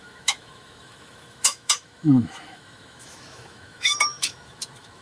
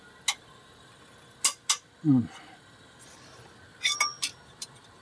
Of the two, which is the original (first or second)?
second